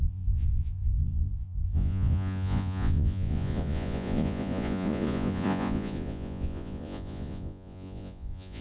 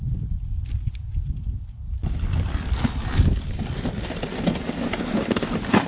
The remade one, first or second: first